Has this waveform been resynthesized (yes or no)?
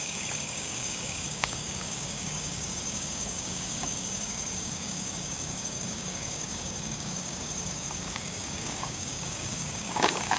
yes